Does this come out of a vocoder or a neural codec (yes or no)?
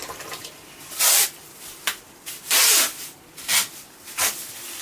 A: no